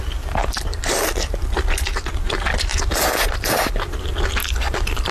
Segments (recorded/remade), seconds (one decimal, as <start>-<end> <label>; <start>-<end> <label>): 0.0-0.4 recorded; 0.4-2.1 remade; 2.1-2.7 recorded; 2.7-4.0 remade; 4.0-4.4 recorded; 4.4-5.1 remade